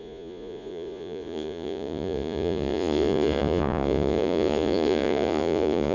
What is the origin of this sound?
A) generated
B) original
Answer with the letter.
A